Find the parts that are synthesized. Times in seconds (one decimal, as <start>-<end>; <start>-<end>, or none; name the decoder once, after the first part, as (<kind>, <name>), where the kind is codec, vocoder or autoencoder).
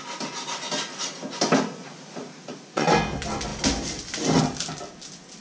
1.8-2.9 (vocoder, Vocos)